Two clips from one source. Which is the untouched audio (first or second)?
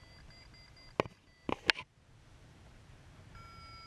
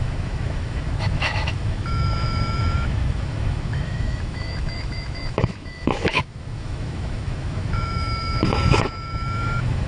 first